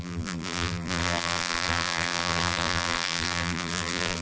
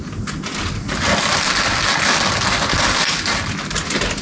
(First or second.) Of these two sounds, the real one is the second